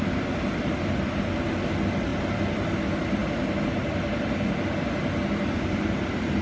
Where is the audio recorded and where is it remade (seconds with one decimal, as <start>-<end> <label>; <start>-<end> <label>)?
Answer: 0.0-6.4 recorded

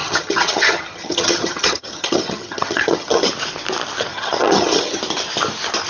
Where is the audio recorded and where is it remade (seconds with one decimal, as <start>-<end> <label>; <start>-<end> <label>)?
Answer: 0.0-3.3 remade; 3.3-4.1 recorded; 4.1-5.0 remade; 5.0-5.9 recorded

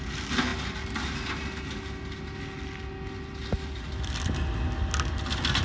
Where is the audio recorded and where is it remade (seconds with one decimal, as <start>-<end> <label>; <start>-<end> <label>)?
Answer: 0.0-5.6 recorded

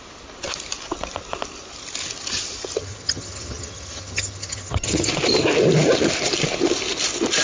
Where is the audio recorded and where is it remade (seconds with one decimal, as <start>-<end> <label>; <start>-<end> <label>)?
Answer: 0.0-2.8 recorded; 2.8-5.1 remade; 5.1-7.4 recorded

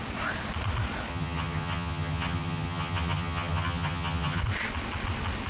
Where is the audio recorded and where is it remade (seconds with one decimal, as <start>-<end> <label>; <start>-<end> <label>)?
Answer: 0.0-1.1 recorded; 1.1-4.4 remade; 4.4-5.5 recorded

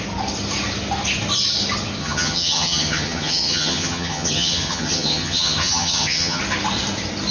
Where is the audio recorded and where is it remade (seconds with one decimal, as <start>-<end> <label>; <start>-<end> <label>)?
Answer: 0.0-2.0 recorded; 2.0-6.4 remade; 6.4-7.3 recorded

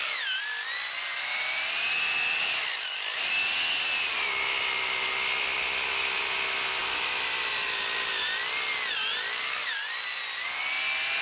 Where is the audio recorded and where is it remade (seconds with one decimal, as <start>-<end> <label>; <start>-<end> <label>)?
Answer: 0.0-11.2 recorded

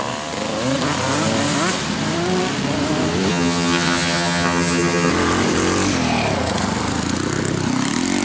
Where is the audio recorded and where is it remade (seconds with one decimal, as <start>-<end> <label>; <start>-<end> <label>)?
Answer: 0.0-3.3 recorded; 3.3-5.1 remade; 5.1-8.2 recorded